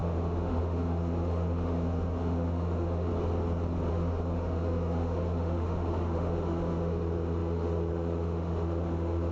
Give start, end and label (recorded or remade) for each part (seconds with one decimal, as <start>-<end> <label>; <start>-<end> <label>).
0.0-3.1 remade; 3.1-3.9 recorded; 3.9-9.3 remade